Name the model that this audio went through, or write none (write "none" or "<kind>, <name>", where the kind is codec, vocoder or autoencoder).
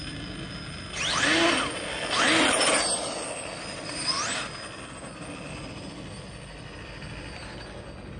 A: none